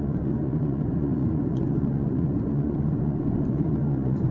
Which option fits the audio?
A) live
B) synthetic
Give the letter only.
B